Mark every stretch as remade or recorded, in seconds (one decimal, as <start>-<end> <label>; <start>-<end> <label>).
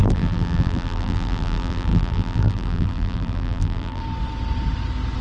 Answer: 0.0-4.0 remade; 4.0-5.2 recorded